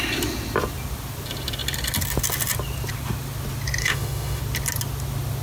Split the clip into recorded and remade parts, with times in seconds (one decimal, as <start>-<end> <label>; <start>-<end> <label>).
0.0-3.8 recorded; 3.8-4.4 remade; 4.4-5.4 recorded